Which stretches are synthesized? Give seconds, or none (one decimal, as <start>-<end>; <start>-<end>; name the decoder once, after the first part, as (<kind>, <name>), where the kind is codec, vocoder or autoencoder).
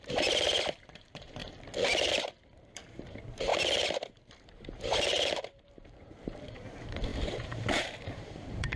0.0-1.4 (vocoder, BigVGAN v2); 2.1-3.5; 4.1-8.8